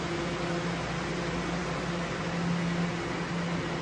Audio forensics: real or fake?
real